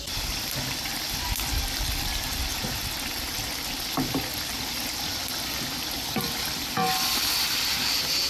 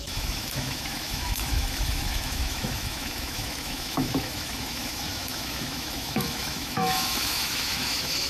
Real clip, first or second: first